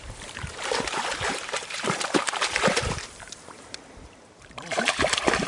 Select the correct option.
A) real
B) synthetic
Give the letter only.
B